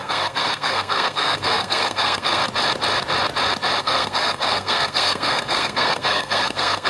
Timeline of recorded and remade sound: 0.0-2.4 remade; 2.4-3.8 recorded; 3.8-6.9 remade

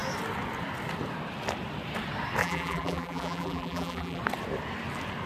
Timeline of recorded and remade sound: 0.0-2.4 recorded; 2.4-4.2 remade; 4.2-5.3 recorded

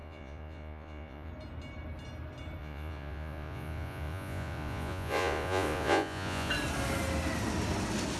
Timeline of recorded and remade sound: 0.0-1.3 remade; 1.3-2.6 recorded; 2.6-6.5 remade; 6.5-8.2 recorded

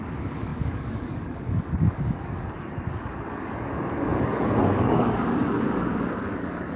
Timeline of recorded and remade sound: 0.0-6.8 remade

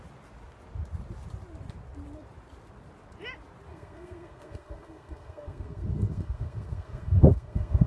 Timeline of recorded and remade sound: 0.0-3.7 recorded; 3.7-7.9 remade

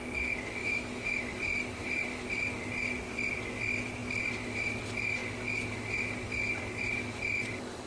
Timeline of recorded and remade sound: 0.0-0.6 recorded; 0.6-1.2 remade; 1.2-7.9 recorded